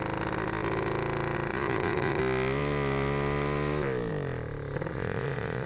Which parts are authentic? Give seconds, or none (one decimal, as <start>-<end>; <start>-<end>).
0.0-1.5; 2.2-4.9